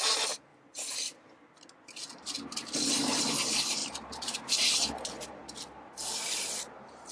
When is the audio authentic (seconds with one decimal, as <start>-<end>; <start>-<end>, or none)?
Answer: 0.0-3.8; 4.5-7.1